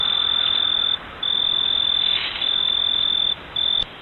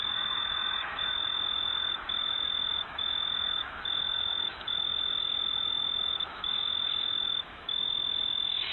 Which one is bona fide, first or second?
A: first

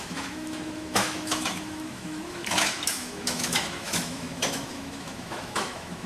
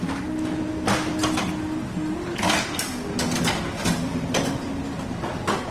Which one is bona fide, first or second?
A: second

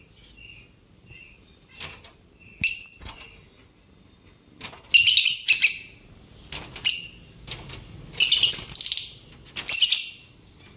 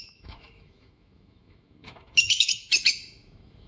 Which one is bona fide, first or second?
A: first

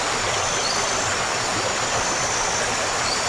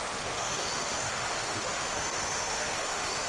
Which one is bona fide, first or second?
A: first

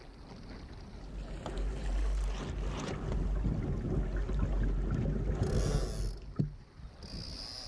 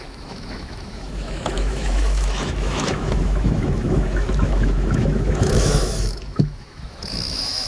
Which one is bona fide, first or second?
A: first